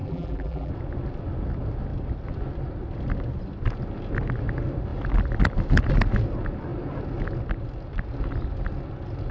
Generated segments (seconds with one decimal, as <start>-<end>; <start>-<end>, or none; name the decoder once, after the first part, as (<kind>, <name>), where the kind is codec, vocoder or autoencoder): 0.0-0.7 (vocoder, BigVGAN v2)